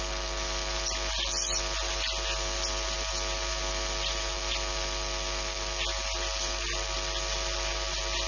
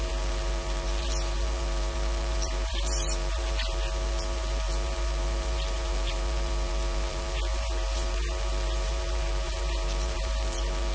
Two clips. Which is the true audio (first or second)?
first